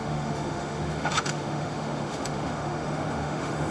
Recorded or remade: remade